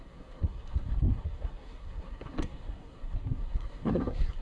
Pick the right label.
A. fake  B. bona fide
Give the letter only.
A